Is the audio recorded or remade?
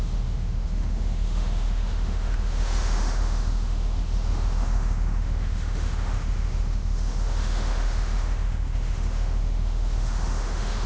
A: remade